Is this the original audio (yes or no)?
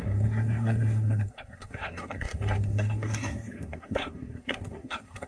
no